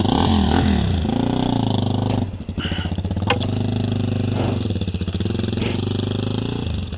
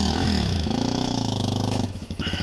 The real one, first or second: first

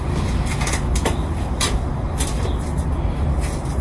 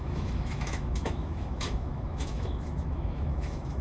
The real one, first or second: first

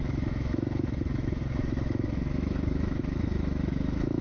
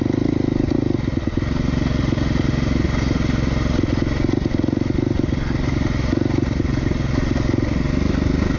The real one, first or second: second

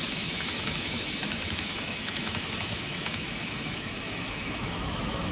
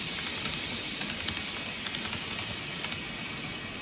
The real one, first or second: second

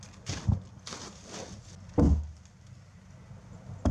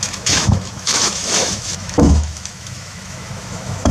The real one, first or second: first